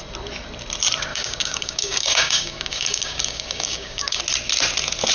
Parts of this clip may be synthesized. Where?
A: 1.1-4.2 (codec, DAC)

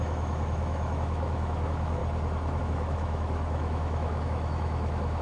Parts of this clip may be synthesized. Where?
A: 0.0-2.0 (autoencoder, DAC-VAE); 2.6-5.2